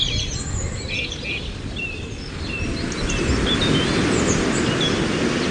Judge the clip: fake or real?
real